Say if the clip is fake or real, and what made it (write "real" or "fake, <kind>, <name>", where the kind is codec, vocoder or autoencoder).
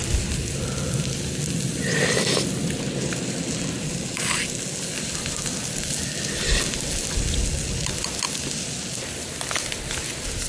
real